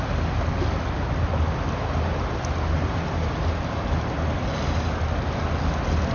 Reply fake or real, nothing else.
real